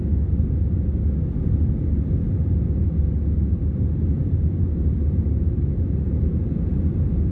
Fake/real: real